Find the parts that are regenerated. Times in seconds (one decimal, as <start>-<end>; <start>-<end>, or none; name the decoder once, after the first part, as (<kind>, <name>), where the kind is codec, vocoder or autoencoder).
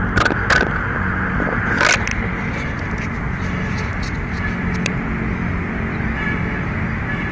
none